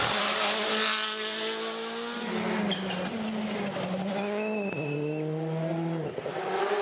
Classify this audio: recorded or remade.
recorded